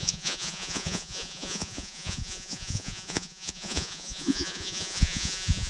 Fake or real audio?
fake